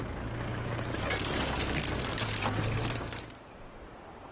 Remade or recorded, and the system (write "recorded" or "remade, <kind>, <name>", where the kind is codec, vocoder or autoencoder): recorded